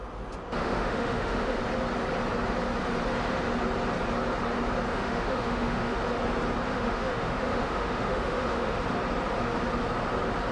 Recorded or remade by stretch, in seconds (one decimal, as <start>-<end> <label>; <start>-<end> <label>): 0.0-0.6 recorded; 0.6-1.6 remade; 1.6-4.9 recorded; 4.9-6.0 remade; 6.0-6.7 recorded; 6.7-8.8 remade; 8.8-10.5 recorded